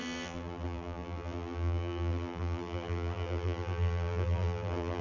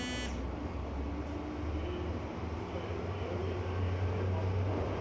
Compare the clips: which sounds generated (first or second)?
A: first